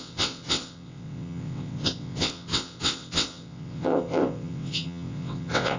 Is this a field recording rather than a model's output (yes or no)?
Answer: no